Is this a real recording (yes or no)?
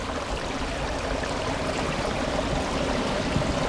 yes